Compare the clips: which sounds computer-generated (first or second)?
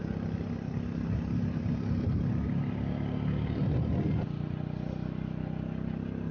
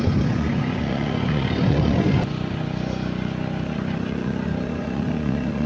second